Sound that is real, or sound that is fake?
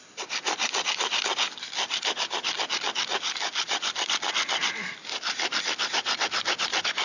fake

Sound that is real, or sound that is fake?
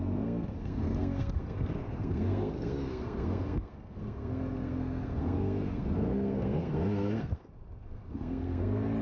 fake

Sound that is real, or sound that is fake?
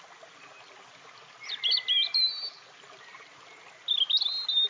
real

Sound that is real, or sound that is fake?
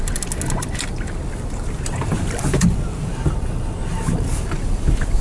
real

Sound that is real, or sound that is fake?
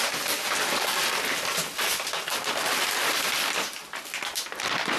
real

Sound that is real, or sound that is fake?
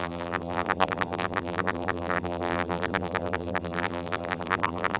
fake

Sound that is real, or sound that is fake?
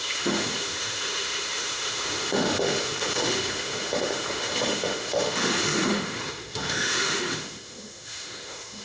fake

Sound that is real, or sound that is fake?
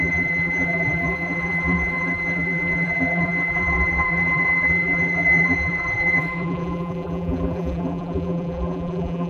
fake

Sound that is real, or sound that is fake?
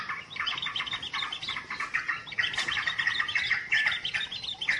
real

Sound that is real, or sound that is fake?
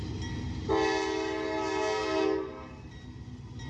real